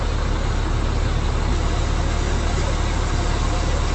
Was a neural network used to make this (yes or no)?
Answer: no